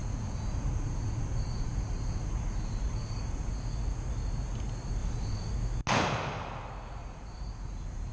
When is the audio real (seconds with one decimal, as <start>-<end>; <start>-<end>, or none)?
3.5-5.0; 5.5-7.0